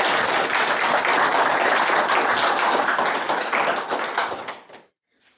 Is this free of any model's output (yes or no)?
yes